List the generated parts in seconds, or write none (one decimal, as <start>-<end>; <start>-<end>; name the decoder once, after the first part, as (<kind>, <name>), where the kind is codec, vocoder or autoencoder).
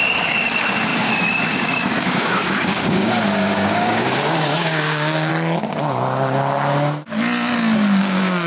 0.0-5.3 (codec, DAC); 8.0-8.5